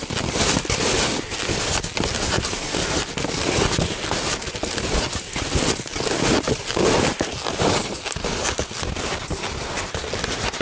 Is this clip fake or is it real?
real